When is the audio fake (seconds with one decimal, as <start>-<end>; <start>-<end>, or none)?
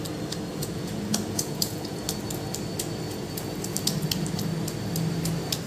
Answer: 0.5-2.0